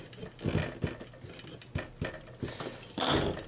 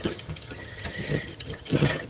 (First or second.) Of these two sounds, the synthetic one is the second